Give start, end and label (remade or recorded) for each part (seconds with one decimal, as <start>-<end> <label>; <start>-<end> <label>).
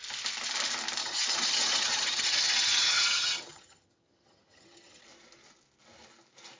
0.0-1.0 recorded; 1.0-5.0 remade; 5.0-6.6 recorded